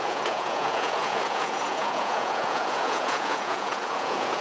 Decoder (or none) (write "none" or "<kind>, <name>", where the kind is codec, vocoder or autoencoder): vocoder, Vocos